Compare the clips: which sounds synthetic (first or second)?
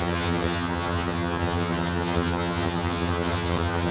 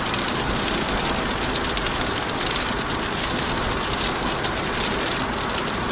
first